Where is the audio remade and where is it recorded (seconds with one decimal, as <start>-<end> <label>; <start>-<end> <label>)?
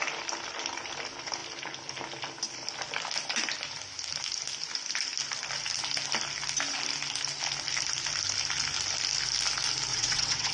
0.0-9.9 recorded; 9.9-10.5 remade